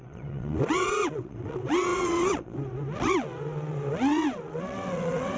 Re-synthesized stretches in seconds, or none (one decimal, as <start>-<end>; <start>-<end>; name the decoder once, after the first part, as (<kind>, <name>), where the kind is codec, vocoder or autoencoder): 0.0-5.4 (vocoder, WaveNeXt)